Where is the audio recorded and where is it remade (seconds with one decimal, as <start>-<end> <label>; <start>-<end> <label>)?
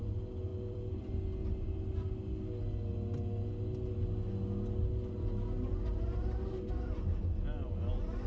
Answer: 0.0-0.5 recorded; 0.5-1.4 remade; 1.4-8.3 recorded